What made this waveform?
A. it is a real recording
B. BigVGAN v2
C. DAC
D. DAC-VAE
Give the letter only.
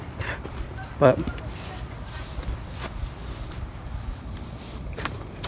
B